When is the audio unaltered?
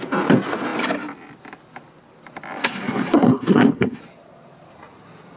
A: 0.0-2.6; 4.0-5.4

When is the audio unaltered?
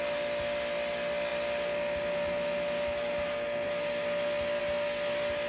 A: 0.0-5.5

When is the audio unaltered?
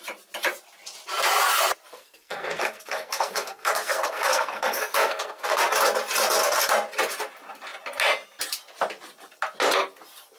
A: 0.0-1.9; 5.6-10.4